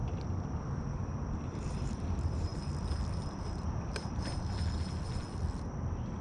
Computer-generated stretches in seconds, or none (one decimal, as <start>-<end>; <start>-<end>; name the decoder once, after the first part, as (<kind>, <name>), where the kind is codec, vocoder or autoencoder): 1.4-2.5 (vocoder, BigVGAN v2)

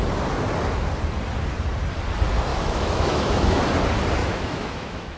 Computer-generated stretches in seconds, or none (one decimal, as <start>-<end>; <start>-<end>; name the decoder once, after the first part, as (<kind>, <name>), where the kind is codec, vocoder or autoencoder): 2.5-3.6 (autoencoder, DAC-VAE); 4.2-5.2

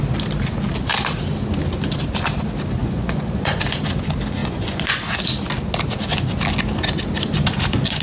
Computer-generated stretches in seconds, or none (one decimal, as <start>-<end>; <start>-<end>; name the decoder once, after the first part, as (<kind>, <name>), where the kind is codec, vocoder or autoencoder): 2.8-3.6 (vocoder, Vocos); 4.4-5.2

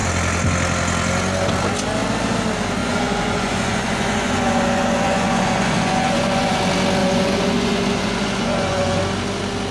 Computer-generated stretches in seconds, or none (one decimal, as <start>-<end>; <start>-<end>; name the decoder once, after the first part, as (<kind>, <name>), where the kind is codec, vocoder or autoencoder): 2.8-6.6 (vocoder, Vocos); 7.0-9.0

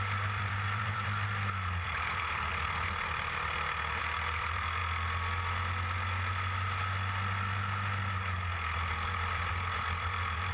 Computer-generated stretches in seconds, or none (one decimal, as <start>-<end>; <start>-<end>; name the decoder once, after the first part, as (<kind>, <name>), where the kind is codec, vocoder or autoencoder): 0.0-2.5 (vocoder, BigVGAN v2); 4.0-4.8; 8.9-10.5

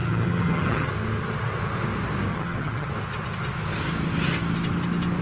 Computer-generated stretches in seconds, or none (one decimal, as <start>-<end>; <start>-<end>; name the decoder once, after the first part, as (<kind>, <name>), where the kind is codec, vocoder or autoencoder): 0.0-0.9 (vocoder, HiFi-GAN); 2.3-2.9